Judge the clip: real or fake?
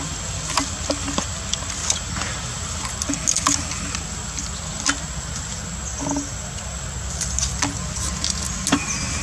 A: real